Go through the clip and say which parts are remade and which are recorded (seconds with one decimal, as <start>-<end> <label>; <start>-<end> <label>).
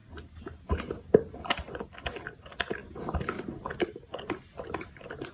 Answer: 0.0-5.3 recorded